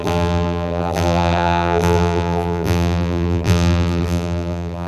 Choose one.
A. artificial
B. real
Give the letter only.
A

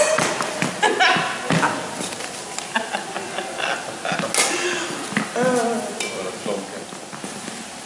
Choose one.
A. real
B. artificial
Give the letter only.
A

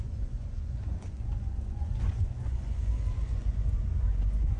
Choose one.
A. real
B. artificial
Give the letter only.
B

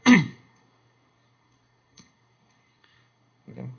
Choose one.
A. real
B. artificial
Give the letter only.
B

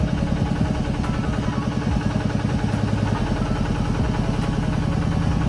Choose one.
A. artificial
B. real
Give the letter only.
B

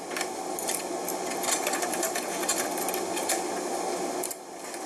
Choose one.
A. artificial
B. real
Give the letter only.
B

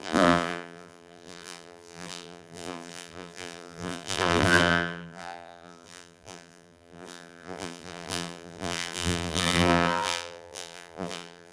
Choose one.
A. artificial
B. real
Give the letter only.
A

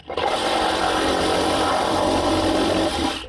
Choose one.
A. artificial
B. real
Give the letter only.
A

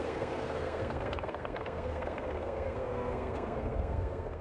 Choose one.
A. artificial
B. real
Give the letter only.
A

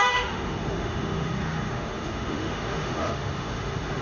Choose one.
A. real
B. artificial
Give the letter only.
B